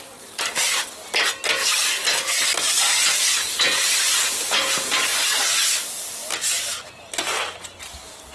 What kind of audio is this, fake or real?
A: real